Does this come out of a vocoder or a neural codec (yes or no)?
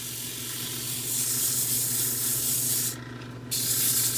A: no